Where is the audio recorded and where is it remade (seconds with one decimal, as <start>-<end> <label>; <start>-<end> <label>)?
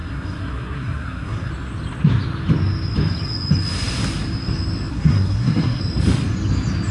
0.0-1.5 remade; 1.5-4.9 recorded; 4.9-5.8 remade; 5.8-6.9 recorded